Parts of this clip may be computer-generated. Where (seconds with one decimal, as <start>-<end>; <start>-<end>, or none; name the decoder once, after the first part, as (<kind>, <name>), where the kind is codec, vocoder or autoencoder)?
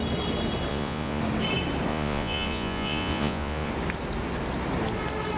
0.7-1.2 (vocoder, Vocos); 1.9-3.7